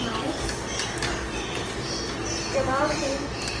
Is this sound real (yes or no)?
no